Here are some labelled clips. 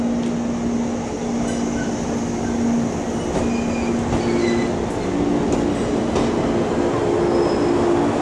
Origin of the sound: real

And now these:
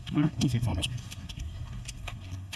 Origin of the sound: fake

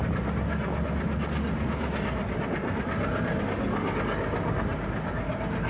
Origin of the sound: real